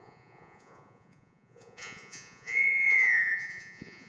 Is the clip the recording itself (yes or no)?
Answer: no